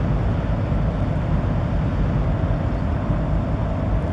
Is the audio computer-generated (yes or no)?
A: no